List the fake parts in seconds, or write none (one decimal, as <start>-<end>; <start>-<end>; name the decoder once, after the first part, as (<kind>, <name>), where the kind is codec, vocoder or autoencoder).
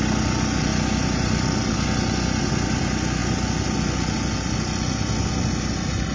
none